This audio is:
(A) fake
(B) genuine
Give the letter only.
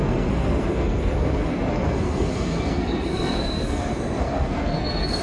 A